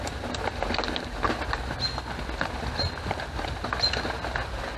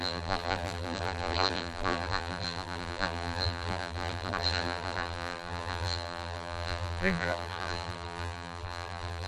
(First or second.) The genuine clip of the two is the first